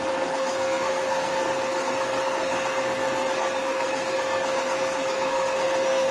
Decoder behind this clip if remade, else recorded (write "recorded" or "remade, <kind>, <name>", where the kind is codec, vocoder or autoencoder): remade, codec, SNAC